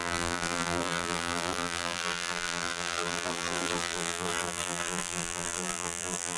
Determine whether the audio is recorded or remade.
remade